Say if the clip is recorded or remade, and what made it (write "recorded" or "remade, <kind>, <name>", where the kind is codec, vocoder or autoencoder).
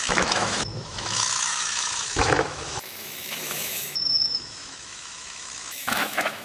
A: remade, autoencoder, DAC-VAE